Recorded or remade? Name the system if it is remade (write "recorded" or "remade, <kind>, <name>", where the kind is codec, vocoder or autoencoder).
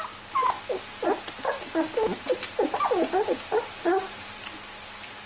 recorded